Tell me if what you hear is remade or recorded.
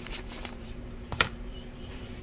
remade